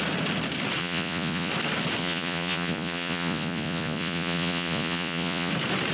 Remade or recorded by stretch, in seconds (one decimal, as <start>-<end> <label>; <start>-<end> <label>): 0.0-0.8 recorded; 0.8-1.5 remade; 1.5-2.0 recorded; 2.0-5.5 remade; 5.5-5.9 recorded